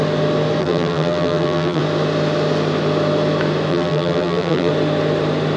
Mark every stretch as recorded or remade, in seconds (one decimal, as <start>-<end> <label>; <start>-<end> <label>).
0.0-0.6 recorded; 0.6-1.8 remade; 1.8-3.7 recorded; 3.7-4.7 remade; 4.7-5.6 recorded